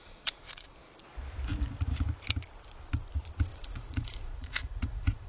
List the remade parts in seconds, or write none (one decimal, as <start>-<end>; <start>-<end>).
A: 0.0-0.7; 3.5-5.3